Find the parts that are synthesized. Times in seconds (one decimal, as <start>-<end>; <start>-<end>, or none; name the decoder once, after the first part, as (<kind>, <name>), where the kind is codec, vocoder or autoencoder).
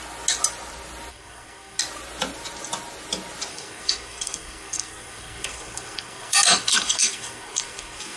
1.1-1.8 (codec, SNAC); 3.5-8.2